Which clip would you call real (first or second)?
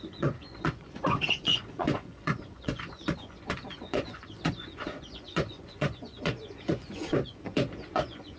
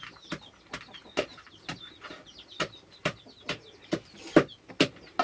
second